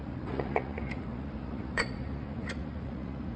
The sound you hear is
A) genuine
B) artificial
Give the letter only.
B